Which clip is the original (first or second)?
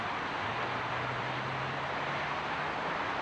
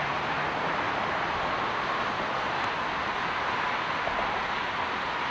second